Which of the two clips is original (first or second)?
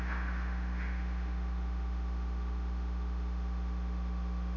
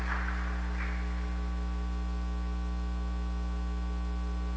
second